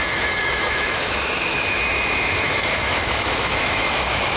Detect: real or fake fake